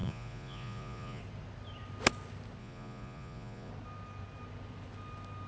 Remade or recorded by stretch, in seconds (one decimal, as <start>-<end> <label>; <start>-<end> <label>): 0.0-1.2 remade; 1.2-2.6 recorded; 2.6-3.7 remade; 3.7-5.5 recorded